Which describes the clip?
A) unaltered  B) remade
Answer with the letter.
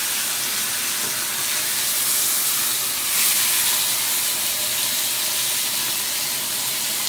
A